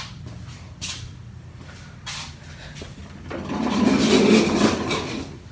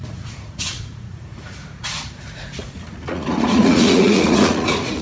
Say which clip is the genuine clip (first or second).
first